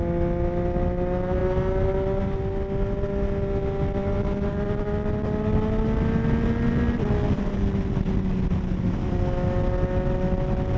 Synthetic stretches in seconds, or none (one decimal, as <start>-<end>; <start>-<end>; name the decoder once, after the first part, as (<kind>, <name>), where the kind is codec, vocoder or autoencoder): none